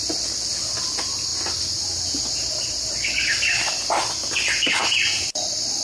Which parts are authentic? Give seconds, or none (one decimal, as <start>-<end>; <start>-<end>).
1.3-2.6